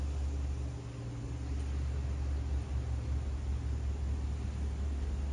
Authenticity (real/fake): real